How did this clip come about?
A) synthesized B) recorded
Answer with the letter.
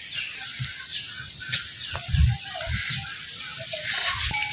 B